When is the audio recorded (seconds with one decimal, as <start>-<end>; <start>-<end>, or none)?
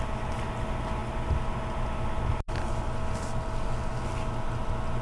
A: 0.0-5.0